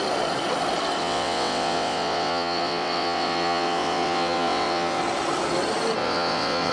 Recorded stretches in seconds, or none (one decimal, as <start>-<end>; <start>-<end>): 0.0-1.0; 5.0-6.0